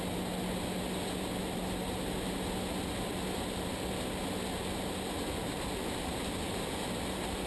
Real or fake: real